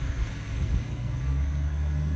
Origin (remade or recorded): remade